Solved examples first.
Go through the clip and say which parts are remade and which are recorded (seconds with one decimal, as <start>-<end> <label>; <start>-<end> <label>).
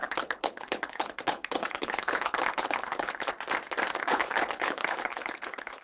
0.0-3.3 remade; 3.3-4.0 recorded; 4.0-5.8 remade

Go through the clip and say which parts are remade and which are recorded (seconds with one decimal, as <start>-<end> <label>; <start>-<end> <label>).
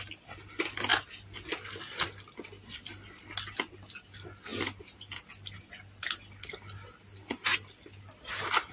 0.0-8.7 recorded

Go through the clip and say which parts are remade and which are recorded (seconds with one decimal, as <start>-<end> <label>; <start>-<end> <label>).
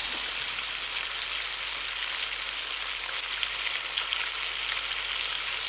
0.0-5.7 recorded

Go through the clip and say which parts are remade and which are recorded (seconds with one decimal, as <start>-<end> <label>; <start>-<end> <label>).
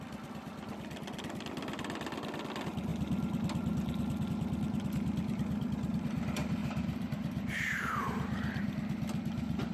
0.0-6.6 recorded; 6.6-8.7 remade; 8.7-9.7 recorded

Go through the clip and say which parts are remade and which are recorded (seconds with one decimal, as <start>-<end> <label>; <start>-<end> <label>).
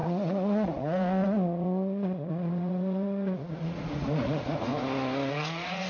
0.0-4.7 remade; 4.7-5.3 recorded; 5.3-5.9 remade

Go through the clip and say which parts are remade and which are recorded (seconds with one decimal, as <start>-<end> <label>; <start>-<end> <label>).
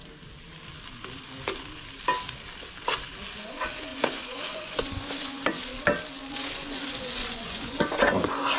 0.0-3.3 recorded; 3.3-5.7 remade; 5.7-6.3 recorded; 6.3-8.6 remade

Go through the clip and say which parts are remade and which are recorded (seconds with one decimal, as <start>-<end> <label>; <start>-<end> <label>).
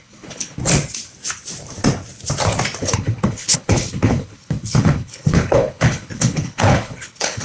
0.0-0.6 remade; 0.6-2.8 recorded; 2.8-7.4 remade